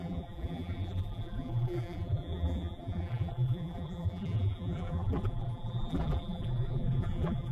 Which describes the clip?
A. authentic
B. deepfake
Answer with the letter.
B